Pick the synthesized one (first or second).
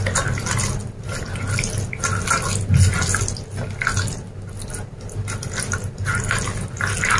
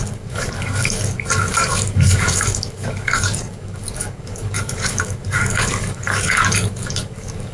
second